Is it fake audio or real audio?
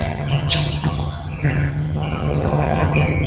fake